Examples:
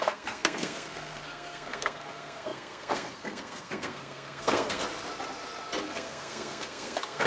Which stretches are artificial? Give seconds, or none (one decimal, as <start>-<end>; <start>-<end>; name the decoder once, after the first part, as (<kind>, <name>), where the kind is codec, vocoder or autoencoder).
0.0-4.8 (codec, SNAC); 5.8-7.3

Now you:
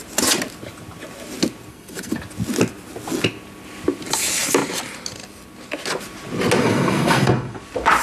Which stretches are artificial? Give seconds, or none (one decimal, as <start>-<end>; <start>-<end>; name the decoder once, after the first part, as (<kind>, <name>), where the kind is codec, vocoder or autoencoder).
1.7-2.2 (codec, SNAC); 6.6-7.6

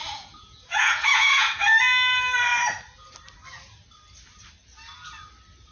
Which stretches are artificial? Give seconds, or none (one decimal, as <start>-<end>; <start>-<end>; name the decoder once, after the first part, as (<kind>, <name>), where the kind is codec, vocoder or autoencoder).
0.0-1.6 (vocoder, Vocos)

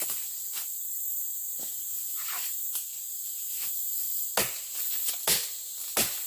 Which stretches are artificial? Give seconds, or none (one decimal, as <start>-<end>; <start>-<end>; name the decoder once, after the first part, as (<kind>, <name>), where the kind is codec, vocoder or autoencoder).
none

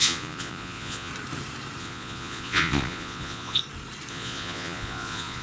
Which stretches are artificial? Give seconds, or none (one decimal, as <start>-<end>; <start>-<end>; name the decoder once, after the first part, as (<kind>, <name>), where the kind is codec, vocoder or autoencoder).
0.0-1.1 (vocoder, Vocos); 1.8-3.6; 4.1-5.4

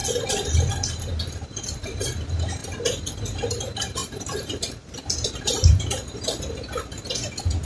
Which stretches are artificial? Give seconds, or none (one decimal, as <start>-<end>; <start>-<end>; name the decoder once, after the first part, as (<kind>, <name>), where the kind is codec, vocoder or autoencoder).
4.0-5.9 (vocoder, BigVGAN v2)

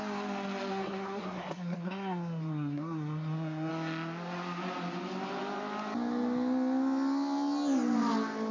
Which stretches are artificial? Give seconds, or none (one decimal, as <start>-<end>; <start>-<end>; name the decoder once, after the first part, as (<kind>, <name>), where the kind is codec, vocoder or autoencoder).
0.7-3.7 (codec, SNAC)

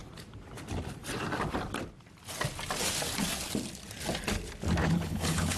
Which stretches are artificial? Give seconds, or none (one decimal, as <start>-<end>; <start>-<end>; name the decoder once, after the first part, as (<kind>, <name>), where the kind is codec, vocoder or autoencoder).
4.8-5.6 (codec, HILCodec)